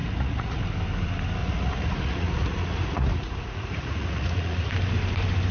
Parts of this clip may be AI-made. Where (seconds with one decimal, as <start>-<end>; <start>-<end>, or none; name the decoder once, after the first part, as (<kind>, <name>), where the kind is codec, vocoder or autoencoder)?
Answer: 0.0-0.6 (vocoder, Vocos); 1.4-4.7